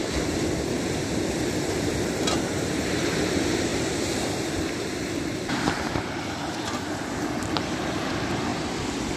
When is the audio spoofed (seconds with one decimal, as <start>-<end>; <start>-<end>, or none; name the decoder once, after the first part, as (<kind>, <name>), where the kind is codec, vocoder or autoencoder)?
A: 0.0-3.7 (vocoder, BigVGAN v2); 4.7-8.5

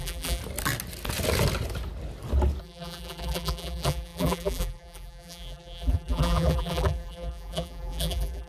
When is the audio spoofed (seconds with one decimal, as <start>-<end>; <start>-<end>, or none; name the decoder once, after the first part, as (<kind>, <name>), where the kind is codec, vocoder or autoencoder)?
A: 0.0-0.4 (vocoder, BigVGAN v2); 2.6-8.5

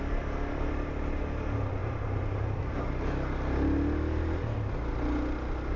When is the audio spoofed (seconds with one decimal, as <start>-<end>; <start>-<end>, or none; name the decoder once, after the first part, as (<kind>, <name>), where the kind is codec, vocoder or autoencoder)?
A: 1.8-2.6 (vocoder, BigVGAN v2)

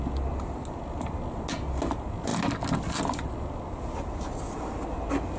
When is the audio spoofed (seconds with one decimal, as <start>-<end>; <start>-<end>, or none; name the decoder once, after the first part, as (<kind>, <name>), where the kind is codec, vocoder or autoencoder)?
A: none

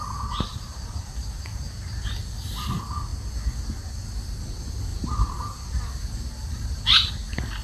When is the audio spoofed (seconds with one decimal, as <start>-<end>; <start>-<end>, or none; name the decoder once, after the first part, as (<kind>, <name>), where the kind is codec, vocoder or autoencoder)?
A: 0.5-2.1 (vocoder, BigVGAN v2); 4.9-7.1

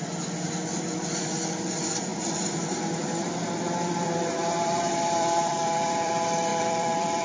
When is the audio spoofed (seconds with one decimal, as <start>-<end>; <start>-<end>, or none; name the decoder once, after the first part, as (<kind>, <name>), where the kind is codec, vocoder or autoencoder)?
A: 2.1-6.1 (vocoder, BigVGAN v2); 6.5-7.2

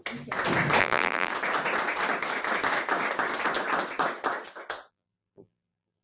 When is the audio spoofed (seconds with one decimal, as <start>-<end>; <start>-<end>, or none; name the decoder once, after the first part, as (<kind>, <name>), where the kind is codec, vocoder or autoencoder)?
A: 0.8-1.3 (vocoder, BigVGAN v2); 4.9-6.0

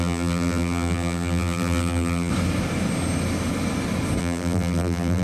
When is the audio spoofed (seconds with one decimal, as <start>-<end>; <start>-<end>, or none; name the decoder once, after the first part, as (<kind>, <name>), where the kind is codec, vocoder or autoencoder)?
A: 0.0-2.3 (vocoder, BigVGAN v2); 4.2-5.2